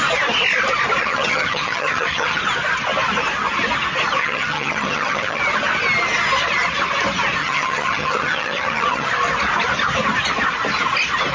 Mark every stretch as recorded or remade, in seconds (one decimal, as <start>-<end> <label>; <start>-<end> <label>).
0.0-1.0 recorded; 1.0-2.4 remade; 2.4-4.2 recorded; 4.2-5.4 remade; 5.4-7.4 recorded; 7.4-9.1 remade; 9.1-11.3 recorded